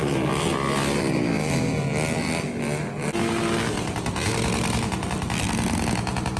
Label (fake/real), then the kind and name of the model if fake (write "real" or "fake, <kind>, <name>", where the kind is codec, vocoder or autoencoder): real